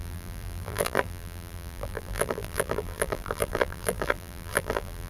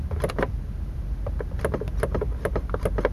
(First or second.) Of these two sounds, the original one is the second